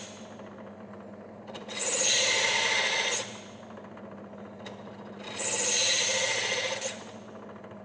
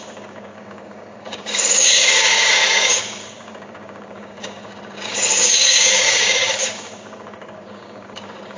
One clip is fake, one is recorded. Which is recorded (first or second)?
first